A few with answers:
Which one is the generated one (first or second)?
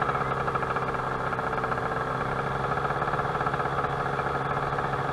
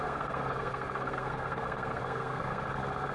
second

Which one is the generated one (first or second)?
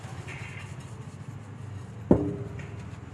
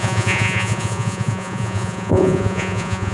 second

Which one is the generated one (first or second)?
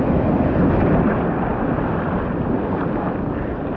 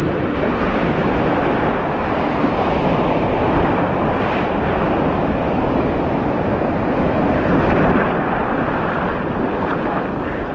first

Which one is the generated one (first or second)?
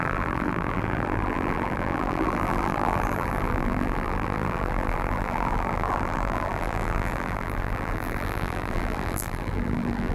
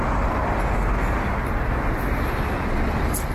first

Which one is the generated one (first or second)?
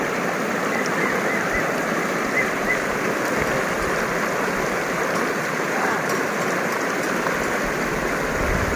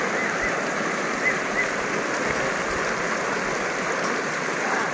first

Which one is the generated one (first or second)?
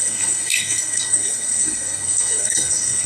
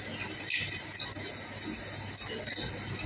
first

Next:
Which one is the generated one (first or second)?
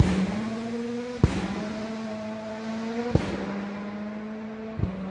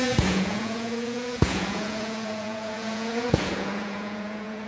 second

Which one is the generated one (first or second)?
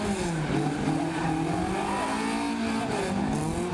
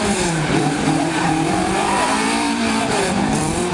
second